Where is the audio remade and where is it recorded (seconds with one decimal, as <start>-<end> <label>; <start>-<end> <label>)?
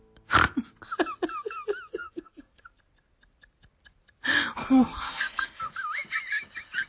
0.0-1.9 recorded; 1.9-2.6 remade; 2.6-4.6 recorded; 4.6-5.7 remade; 5.7-6.9 recorded